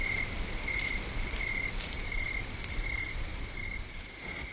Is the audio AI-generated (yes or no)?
yes